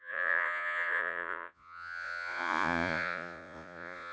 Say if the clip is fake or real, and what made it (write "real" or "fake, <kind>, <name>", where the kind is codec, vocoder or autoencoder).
fake, vocoder, Vocos